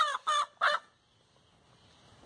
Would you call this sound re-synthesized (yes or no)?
no